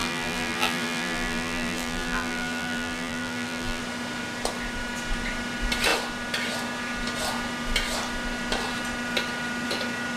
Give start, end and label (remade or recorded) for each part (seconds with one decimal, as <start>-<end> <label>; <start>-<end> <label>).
0.0-3.8 remade; 3.8-10.2 recorded